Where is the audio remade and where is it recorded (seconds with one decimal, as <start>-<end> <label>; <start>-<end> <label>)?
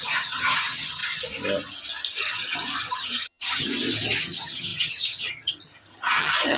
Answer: 0.0-1.0 remade; 1.0-2.9 recorded; 2.9-3.7 remade; 3.7-4.2 recorded; 4.2-6.6 remade